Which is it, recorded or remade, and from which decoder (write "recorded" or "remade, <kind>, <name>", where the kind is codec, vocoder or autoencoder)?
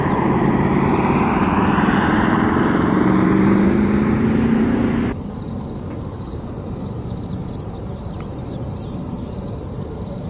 remade, vocoder, BigVGAN v2